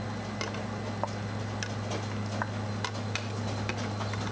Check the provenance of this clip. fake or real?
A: real